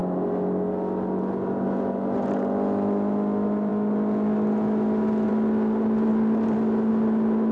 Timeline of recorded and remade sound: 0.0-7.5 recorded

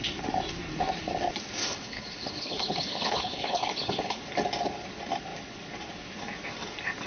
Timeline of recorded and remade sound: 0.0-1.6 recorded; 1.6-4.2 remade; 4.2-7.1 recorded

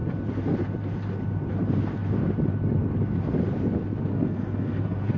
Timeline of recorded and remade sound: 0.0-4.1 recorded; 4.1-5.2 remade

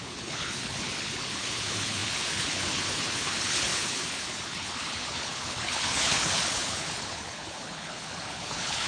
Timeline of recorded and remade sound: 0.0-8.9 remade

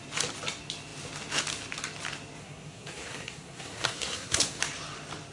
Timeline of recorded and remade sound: 0.0-2.4 recorded; 2.4-4.6 remade; 4.6-5.3 recorded

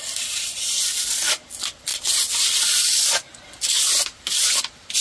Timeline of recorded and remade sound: 0.0-5.0 recorded

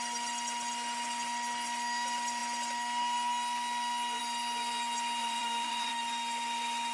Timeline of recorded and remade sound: 0.0-5.2 recorded; 5.2-5.9 remade; 5.9-6.9 recorded

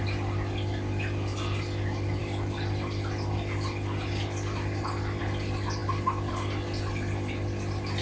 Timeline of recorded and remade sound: 0.0-8.0 recorded